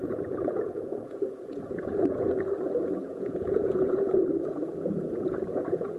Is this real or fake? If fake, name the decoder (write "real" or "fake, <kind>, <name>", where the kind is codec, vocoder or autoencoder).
fake, vocoder, Vocos